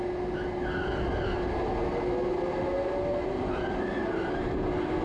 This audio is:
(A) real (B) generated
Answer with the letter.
A